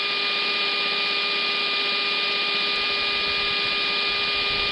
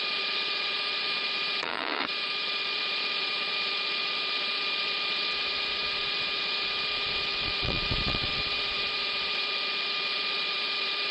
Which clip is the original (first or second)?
first